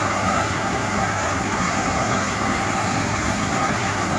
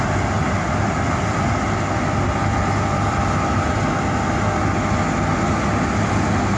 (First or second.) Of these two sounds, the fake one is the first